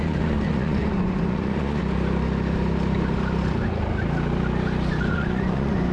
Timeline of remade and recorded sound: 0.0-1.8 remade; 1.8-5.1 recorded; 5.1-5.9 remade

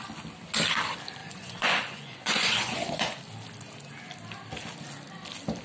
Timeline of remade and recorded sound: 0.0-1.2 recorded; 1.2-3.2 remade; 3.2-5.6 recorded

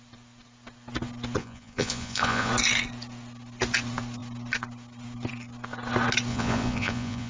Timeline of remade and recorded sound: 0.0-1.4 recorded; 1.4-2.5 remade; 2.5-6.3 recorded; 6.3-7.3 remade

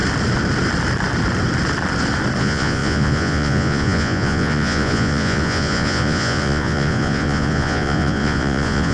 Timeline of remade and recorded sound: 0.0-2.4 recorded; 2.4-8.9 remade